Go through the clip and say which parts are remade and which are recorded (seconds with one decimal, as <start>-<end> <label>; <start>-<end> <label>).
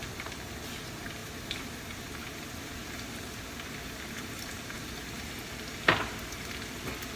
0.0-1.2 recorded; 1.2-4.9 remade; 4.9-7.2 recorded